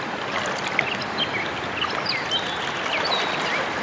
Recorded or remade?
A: recorded